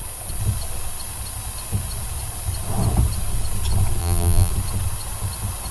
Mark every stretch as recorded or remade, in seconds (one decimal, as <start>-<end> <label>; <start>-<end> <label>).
0.0-4.0 recorded; 4.0-4.5 remade; 4.5-5.7 recorded